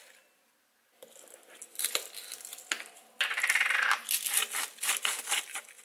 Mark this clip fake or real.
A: real